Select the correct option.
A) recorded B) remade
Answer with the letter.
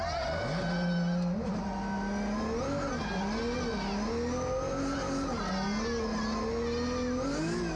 A